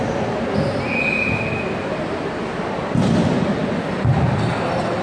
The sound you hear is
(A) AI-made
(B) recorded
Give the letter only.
B